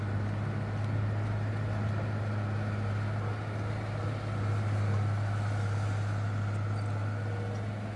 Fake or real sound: real